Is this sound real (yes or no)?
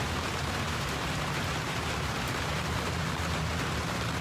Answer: no